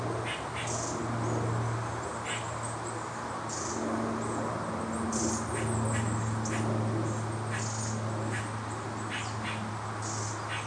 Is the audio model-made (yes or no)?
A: no